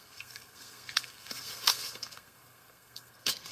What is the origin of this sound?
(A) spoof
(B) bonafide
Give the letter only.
A